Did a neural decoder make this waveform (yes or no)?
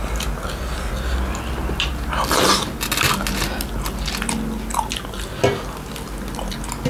no